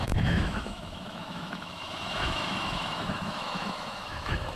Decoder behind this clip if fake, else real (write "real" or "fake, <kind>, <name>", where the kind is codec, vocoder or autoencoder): fake, autoencoder, DAC-VAE